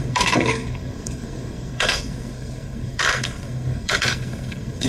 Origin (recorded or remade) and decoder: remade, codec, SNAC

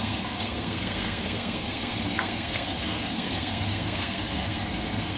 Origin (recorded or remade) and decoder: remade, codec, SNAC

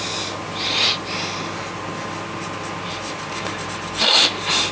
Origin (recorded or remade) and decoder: recorded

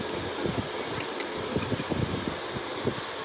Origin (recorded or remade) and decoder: recorded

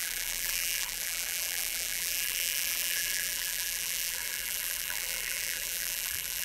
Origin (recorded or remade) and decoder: remade, vocoder, BigVGAN v2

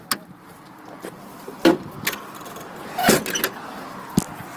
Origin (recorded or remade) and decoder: recorded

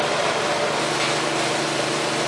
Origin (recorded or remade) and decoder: recorded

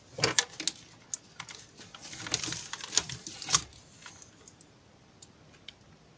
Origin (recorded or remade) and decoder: recorded